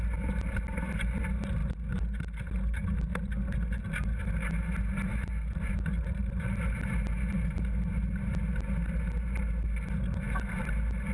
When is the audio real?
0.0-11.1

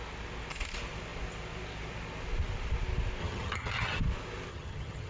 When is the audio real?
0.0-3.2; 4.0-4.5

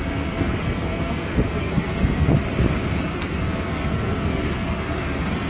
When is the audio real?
2.3-3.0

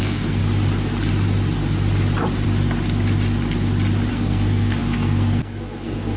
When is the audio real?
0.4-4.1